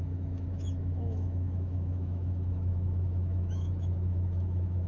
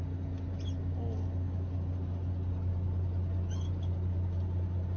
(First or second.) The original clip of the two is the second